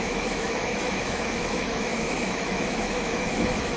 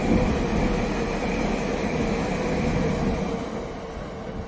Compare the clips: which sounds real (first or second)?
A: second